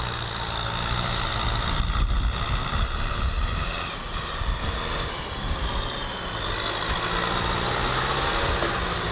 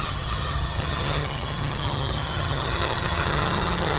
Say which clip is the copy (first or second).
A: second